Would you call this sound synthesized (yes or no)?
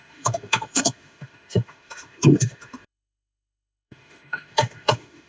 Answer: yes